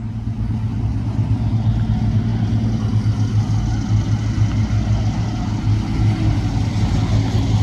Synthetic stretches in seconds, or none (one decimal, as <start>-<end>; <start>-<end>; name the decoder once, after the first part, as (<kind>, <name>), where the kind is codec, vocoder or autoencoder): none